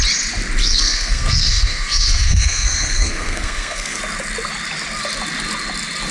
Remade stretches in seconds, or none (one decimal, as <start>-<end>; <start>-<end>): 0.6-4.0